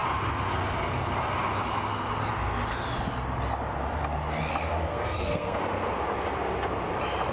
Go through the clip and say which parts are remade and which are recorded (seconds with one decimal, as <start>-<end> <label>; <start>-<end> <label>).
0.0-4.9 recorded; 4.9-5.6 remade; 5.6-7.3 recorded